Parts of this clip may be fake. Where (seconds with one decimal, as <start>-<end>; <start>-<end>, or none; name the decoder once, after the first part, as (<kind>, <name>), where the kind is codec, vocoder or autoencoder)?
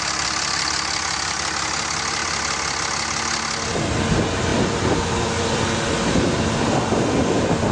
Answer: none